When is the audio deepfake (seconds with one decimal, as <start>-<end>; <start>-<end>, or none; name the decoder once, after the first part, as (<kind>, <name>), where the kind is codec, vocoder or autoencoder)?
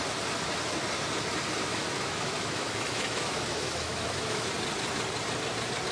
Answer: 1.7-4.5 (autoencoder, DAC-VAE)